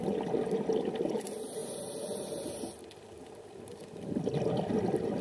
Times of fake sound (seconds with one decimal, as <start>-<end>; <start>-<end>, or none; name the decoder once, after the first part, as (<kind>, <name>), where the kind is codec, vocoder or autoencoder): none